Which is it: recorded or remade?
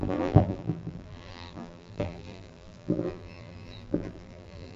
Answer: remade